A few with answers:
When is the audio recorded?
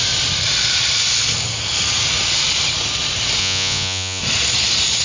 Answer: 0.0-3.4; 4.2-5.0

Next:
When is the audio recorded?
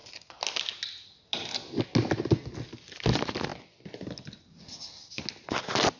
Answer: 0.0-6.0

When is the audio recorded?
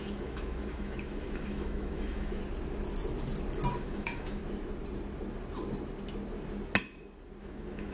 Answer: 2.4-3.7; 4.4-7.4